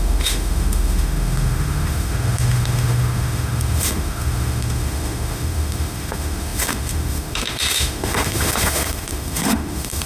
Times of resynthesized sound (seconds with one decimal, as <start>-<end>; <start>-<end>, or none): 0.0-10.1